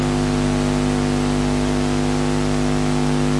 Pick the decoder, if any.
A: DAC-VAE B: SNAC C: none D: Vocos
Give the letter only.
C